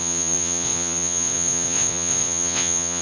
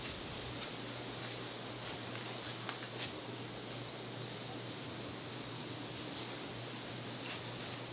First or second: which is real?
second